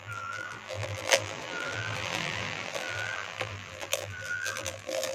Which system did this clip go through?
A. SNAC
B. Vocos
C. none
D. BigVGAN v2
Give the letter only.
D